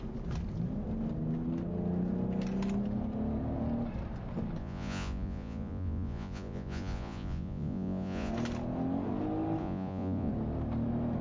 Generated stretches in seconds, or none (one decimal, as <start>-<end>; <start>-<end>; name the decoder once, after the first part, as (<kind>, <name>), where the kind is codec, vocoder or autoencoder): 4.6-8.3 (vocoder, Vocos); 9.6-10.3